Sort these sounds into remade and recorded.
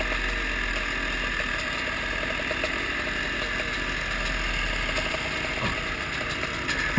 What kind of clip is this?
recorded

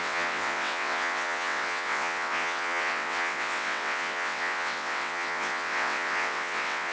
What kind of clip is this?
remade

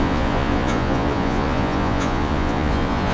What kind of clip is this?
remade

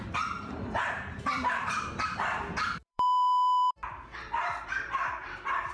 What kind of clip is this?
remade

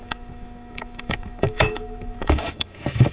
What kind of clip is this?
remade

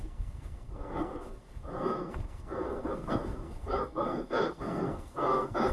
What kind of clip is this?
remade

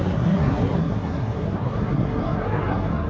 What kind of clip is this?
remade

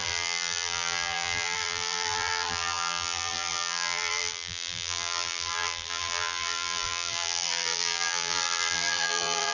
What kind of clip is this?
remade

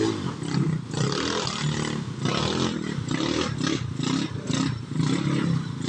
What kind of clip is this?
recorded